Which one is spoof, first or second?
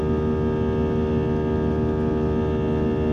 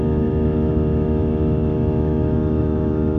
second